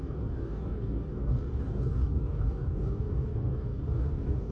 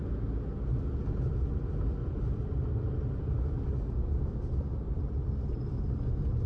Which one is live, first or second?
second